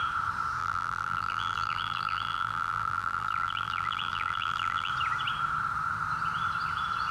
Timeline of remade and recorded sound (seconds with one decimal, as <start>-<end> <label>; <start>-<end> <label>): 0.0-0.6 recorded; 0.6-4.9 remade; 4.9-7.1 recorded

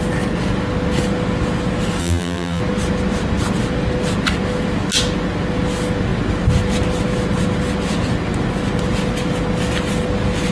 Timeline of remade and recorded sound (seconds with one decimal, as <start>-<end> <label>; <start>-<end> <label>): 0.0-2.0 recorded; 2.0-2.6 remade; 2.6-10.5 recorded

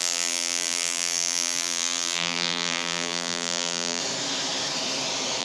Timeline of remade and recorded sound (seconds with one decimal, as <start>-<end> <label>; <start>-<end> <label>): 0.0-4.0 remade; 4.0-5.4 recorded

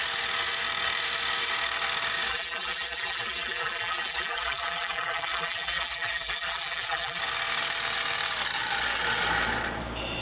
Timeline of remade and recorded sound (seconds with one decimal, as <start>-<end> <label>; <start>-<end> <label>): 0.0-2.3 recorded; 2.3-7.2 remade; 7.2-10.2 recorded

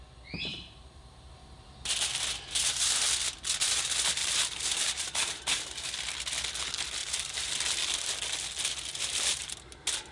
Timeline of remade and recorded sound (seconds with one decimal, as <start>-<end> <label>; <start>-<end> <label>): 0.0-0.5 recorded; 0.5-1.3 remade; 1.3-4.2 recorded; 4.2-5.9 remade; 5.9-7.0 recorded; 7.0-7.5 remade; 7.5-8.9 recorded; 8.9-9.4 remade; 9.4-10.1 recorded

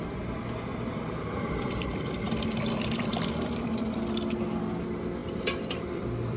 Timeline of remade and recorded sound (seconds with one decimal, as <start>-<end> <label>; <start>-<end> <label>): 0.0-0.7 recorded; 0.7-4.0 remade; 4.0-5.2 recorded; 5.2-6.4 remade